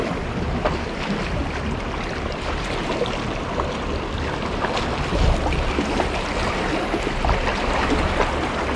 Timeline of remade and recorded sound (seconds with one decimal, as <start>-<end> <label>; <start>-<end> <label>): 0.0-2.3 recorded; 2.3-2.9 remade; 2.9-8.8 recorded